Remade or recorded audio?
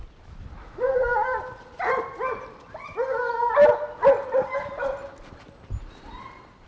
recorded